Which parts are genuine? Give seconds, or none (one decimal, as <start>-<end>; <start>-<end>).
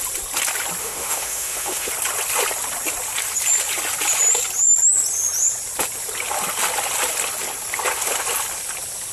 0.0-0.8; 1.9-9.1